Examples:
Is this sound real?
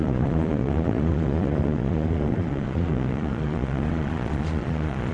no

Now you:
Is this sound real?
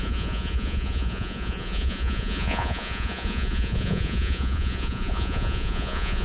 no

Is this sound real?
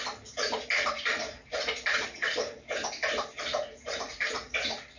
yes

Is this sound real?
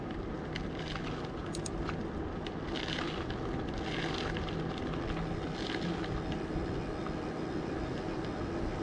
yes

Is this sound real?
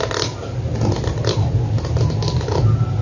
yes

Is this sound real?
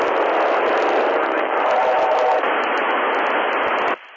yes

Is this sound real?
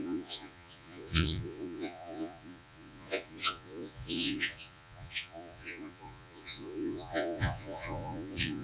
no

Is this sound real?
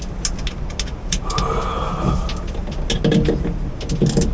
yes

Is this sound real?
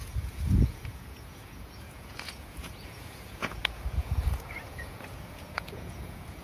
no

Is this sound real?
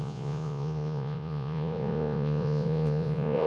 no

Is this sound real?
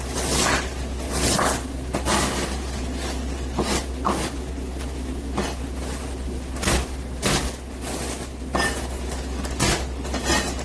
yes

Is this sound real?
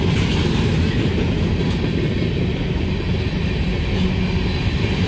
yes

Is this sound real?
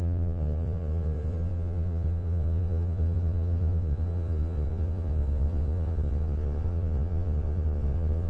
no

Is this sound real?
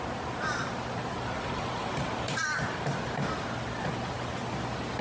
yes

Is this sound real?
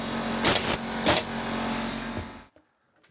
yes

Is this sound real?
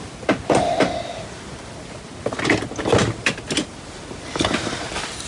yes